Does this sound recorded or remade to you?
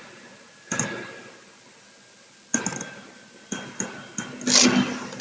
recorded